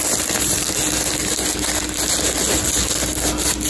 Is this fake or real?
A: real